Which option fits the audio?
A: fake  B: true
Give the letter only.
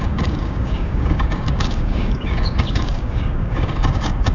A